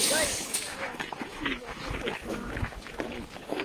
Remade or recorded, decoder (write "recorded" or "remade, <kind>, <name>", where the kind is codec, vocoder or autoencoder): remade, autoencoder, DAC-VAE